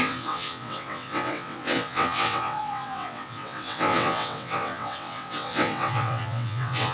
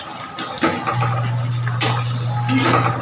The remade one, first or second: first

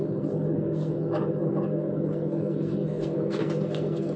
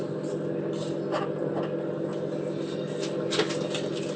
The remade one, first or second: first